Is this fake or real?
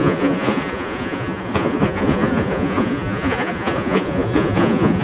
fake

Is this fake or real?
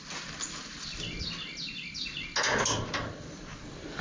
real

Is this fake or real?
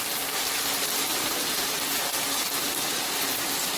real